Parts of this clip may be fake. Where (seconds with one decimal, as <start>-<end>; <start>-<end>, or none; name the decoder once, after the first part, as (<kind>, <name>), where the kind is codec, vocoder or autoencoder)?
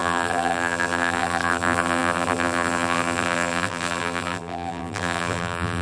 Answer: 0.0-5.8 (vocoder, BigVGAN v2)